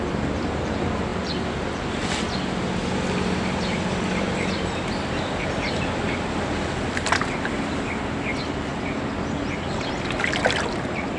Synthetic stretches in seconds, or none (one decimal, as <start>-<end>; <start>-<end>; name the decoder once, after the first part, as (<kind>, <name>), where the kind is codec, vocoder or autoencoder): 0.0-8.7 (vocoder, BigVGAN v2); 10.2-11.2